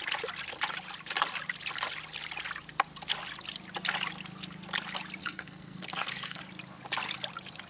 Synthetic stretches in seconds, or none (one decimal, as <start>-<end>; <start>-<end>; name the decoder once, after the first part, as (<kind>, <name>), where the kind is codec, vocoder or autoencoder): 5.2-6.4 (codec, SNAC)

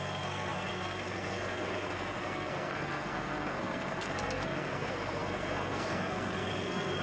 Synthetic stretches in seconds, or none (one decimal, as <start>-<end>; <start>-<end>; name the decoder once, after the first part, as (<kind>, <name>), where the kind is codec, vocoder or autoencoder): 0.0-7.0 (codec, SNAC)

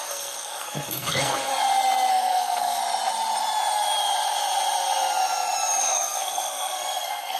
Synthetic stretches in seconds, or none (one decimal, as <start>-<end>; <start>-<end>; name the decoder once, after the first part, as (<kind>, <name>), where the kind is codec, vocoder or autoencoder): 0.0-1.5 (codec, SNAC); 2.1-2.8; 5.8-7.4

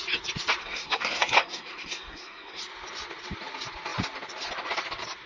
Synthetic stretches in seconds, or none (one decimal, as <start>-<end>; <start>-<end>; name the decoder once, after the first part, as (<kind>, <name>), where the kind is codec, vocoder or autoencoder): 0.6-2.6 (codec, SNAC)

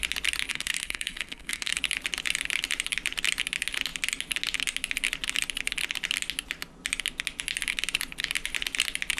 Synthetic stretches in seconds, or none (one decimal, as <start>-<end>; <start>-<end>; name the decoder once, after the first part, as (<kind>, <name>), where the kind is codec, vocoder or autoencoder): 0.5-1.7 (codec, SNAC)

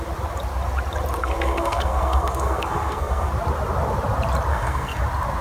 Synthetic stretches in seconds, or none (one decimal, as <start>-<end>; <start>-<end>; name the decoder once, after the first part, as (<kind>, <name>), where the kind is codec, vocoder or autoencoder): 1.2-3.3 (codec, SNAC); 4.5-5.0

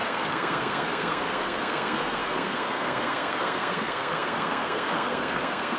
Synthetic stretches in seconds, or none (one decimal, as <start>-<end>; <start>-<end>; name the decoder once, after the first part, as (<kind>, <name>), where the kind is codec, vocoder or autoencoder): 0.0-5.8 (codec, SNAC)

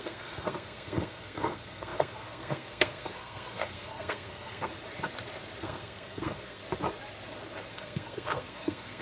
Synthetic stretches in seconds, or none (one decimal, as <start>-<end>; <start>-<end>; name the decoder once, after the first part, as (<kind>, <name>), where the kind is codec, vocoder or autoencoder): 0.0-4.7 (codec, SNAC); 5.6-6.6; 7.7-9.0